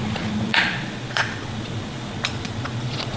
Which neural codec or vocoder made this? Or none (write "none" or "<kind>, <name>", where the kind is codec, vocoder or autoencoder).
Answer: vocoder, Vocos